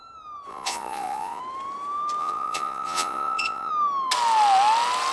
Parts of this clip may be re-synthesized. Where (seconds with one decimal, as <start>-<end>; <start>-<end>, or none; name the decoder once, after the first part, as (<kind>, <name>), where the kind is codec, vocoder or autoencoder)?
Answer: 0.5-1.4 (vocoder, Vocos); 2.2-3.7